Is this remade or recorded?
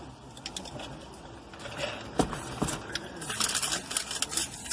recorded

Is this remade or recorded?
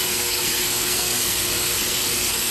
remade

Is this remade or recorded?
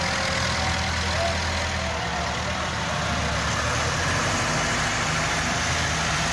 recorded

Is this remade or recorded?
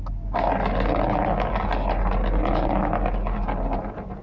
recorded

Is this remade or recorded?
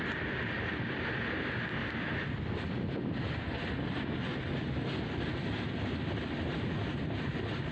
recorded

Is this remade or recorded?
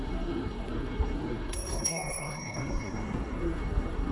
remade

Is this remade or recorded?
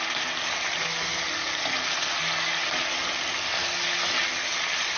recorded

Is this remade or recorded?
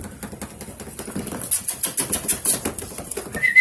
recorded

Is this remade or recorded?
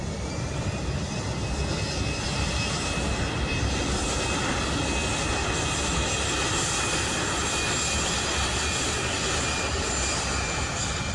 recorded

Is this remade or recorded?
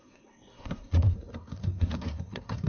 remade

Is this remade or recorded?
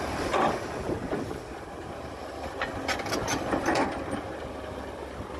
recorded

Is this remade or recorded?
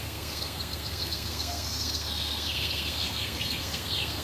remade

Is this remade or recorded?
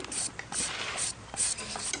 recorded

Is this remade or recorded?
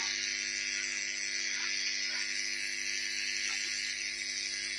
recorded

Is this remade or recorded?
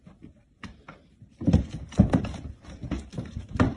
recorded